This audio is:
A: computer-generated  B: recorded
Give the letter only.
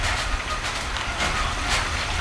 B